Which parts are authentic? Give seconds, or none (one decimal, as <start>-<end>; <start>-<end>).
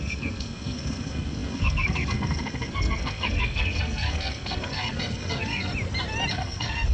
5.7-6.3